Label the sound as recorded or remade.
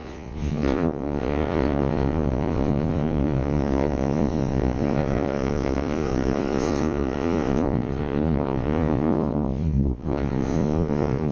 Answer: remade